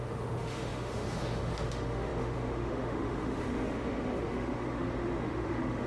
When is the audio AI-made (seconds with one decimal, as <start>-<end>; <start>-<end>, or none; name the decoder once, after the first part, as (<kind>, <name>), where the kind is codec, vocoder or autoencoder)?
0.0-5.9 (autoencoder, DAC-VAE)